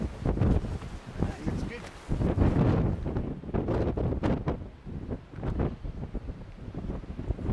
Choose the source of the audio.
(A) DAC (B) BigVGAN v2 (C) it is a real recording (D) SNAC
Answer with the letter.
C